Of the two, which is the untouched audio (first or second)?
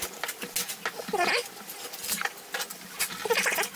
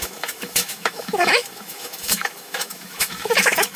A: first